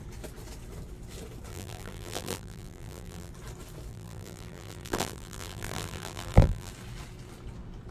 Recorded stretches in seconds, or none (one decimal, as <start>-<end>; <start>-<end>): 0.0-1.5; 3.3-3.9; 6.7-7.9